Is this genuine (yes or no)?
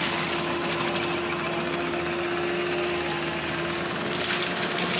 yes